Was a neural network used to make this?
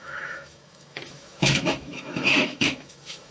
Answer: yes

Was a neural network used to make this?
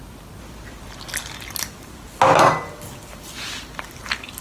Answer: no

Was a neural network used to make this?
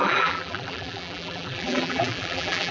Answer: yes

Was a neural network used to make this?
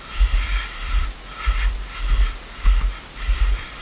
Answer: no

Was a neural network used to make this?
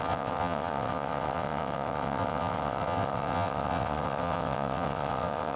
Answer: yes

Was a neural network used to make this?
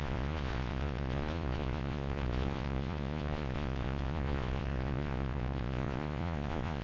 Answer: yes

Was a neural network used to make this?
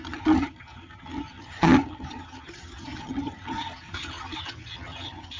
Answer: yes